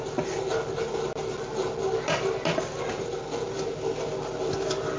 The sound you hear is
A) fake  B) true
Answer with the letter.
B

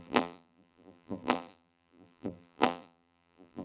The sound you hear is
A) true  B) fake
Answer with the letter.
B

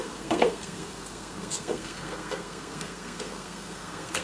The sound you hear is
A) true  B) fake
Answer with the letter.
B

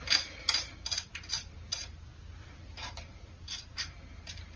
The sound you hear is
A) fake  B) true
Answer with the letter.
B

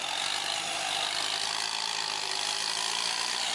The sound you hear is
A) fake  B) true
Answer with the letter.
B